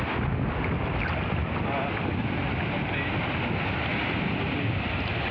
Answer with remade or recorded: recorded